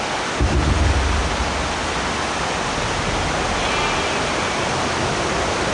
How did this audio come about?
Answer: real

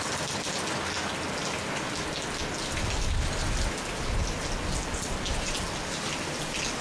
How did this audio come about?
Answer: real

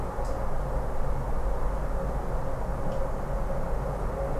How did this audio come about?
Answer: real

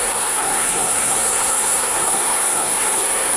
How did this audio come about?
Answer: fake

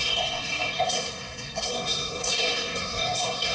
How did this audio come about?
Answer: fake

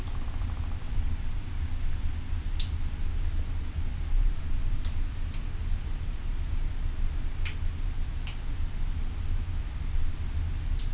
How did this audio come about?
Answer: real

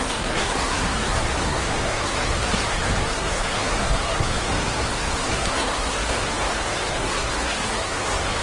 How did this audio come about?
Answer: fake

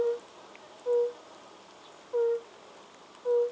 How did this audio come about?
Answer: real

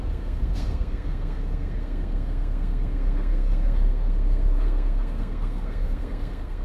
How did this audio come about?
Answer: fake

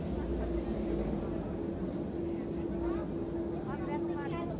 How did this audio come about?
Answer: real